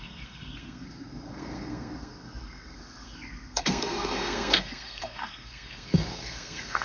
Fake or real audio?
fake